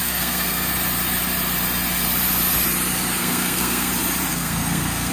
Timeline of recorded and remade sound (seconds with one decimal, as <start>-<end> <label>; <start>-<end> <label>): 0.0-0.7 remade; 0.7-3.2 recorded; 3.2-3.9 remade; 3.9-4.3 recorded; 4.3-5.1 remade